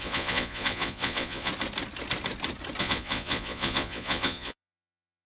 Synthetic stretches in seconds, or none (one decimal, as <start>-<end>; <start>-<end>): 0.0-1.5; 2.8-5.2